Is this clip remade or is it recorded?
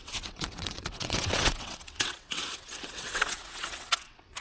remade